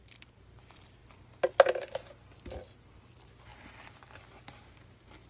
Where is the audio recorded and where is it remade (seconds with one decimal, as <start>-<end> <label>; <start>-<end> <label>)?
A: 0.0-5.3 recorded